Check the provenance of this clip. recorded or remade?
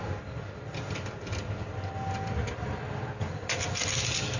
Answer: recorded